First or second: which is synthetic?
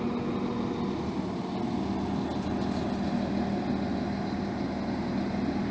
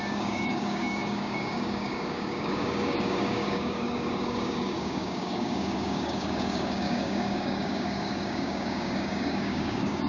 second